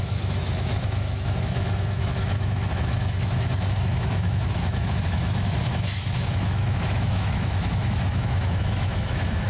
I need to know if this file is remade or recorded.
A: remade